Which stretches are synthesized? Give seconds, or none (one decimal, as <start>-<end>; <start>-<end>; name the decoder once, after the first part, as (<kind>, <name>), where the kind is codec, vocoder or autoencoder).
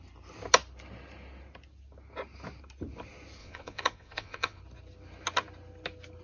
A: 3.4-4.6 (vocoder, Vocos)